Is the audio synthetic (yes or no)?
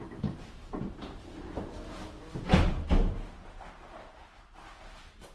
no